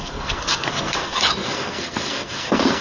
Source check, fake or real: fake